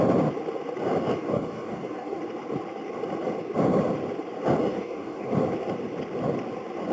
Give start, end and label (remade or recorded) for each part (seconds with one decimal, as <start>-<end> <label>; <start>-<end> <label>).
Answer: 0.0-1.2 recorded; 1.2-2.2 remade; 2.2-4.7 recorded; 4.7-5.3 remade; 5.3-6.9 recorded